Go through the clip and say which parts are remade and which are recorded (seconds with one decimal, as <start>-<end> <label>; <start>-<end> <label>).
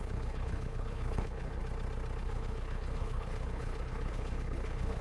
0.0-1.6 remade; 1.6-2.2 recorded; 2.2-5.0 remade